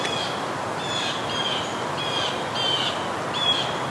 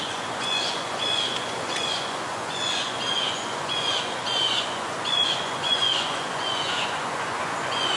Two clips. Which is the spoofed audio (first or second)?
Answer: second